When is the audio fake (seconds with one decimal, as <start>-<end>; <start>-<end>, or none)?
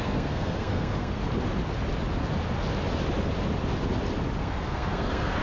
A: 0.0-1.2; 4.4-5.4